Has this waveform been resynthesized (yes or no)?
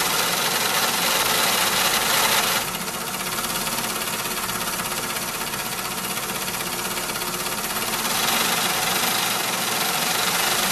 no